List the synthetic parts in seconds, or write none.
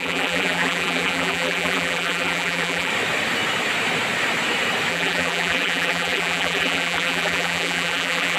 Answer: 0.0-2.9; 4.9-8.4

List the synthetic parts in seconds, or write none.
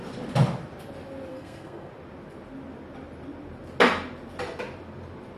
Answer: 1.3-1.9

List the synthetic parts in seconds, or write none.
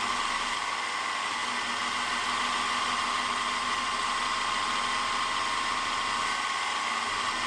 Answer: none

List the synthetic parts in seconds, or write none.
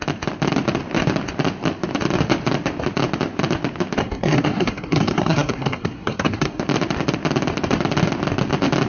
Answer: 4.0-6.6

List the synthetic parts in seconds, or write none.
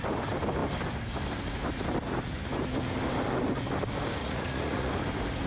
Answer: 4.2-4.9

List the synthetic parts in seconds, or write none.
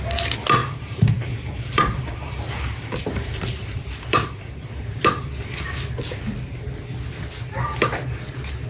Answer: 0.6-5.0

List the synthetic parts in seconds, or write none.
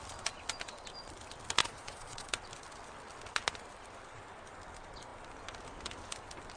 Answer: 1.6-2.3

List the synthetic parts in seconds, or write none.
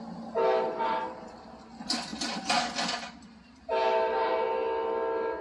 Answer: none